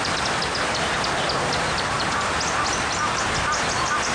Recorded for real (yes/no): yes